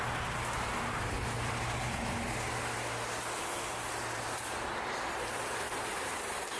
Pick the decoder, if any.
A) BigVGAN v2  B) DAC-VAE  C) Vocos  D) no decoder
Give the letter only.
A